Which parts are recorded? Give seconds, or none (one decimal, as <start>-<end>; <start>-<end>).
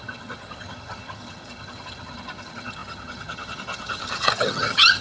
none